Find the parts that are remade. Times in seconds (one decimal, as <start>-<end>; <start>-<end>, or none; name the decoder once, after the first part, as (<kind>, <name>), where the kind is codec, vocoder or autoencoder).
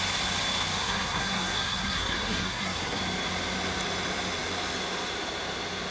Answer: 0.8-3.0 (codec, SNAC)